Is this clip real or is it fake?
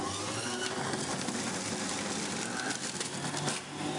real